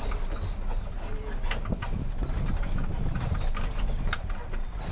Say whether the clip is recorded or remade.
recorded